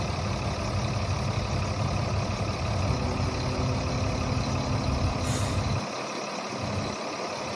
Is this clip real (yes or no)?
yes